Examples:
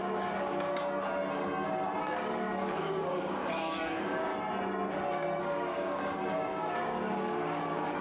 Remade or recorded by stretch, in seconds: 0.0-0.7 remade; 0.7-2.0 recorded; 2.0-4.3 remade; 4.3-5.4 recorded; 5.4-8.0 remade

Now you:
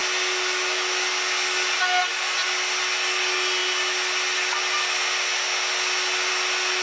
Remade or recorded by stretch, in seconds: 0.0-6.8 recorded